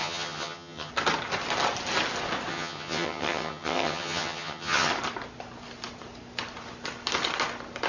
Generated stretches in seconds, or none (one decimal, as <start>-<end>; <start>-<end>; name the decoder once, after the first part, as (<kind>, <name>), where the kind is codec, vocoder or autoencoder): 0.0-0.9 (vocoder, HiFi-GAN); 2.5-4.9